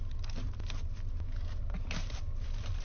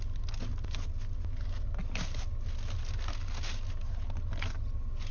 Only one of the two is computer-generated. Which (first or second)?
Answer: first